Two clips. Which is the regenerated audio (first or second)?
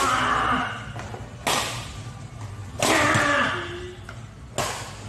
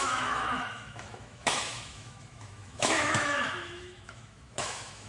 second